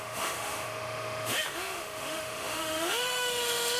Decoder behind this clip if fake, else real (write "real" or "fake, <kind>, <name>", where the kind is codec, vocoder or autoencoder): fake, autoencoder, DAC-VAE